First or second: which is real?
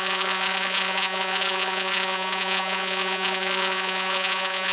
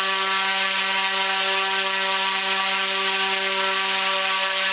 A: second